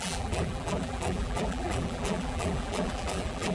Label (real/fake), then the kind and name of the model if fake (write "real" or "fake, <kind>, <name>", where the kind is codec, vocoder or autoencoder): fake, vocoder, BigVGAN v2